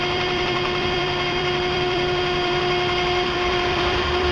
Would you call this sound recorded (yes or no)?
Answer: no